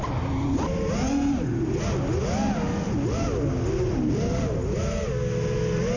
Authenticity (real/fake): real